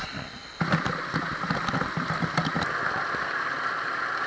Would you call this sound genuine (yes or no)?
yes